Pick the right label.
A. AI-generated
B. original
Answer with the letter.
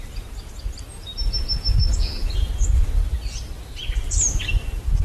B